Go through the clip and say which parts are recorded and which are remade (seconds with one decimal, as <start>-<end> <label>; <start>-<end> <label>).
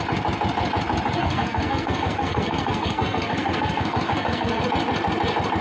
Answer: 0.0-1.2 recorded; 1.2-4.6 remade; 4.6-5.6 recorded